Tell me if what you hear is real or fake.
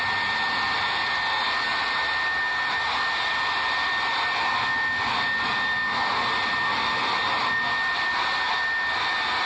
real